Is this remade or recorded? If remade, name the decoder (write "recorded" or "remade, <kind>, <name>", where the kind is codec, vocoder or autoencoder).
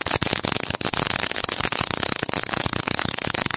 recorded